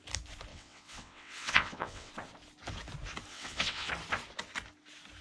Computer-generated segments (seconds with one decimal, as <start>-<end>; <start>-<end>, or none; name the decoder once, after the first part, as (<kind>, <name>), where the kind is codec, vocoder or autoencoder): 0.5-2.1 (vocoder, WaveNeXt); 3.3-3.9